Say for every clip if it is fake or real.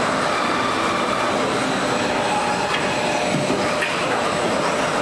real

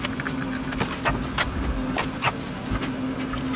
real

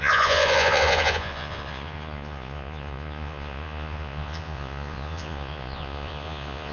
fake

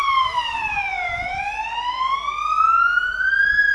real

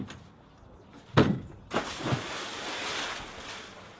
real